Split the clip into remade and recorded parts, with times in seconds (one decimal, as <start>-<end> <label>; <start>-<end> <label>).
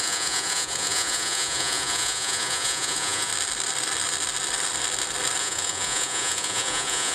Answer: 0.0-3.3 remade; 3.3-5.4 recorded; 5.4-7.1 remade